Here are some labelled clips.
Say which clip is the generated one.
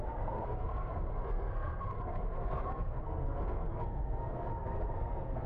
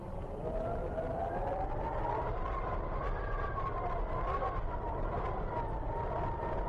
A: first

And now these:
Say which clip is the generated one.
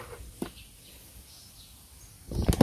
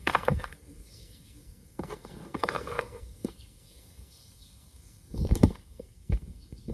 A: second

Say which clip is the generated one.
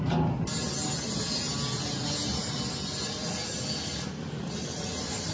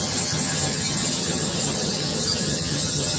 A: second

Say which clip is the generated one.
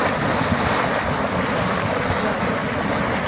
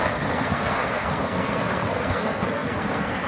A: second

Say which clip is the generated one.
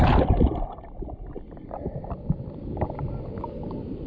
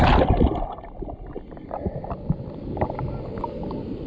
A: first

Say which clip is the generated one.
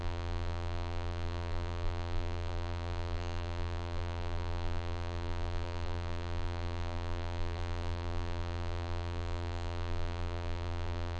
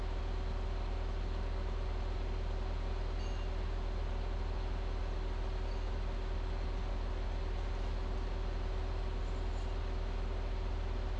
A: first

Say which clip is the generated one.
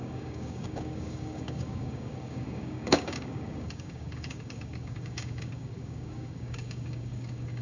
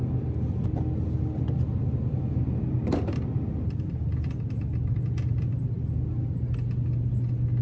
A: first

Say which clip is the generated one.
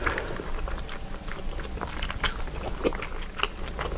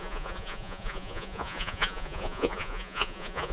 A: second